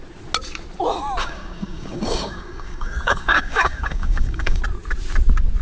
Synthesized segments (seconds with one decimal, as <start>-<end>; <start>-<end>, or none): 1.2-4.6